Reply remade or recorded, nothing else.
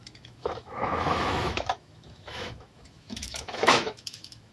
remade